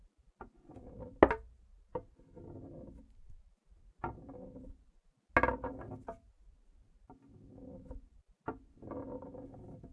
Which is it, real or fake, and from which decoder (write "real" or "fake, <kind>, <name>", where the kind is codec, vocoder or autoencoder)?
real